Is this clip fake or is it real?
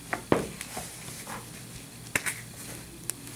real